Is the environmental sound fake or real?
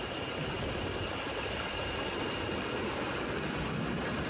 real